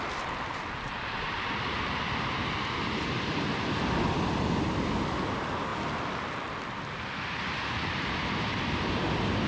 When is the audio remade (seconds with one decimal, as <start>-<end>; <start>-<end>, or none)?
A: none